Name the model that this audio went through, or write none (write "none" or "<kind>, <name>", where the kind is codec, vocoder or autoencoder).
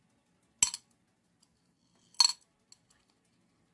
none